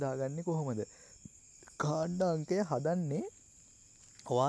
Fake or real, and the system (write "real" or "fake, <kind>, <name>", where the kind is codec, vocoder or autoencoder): real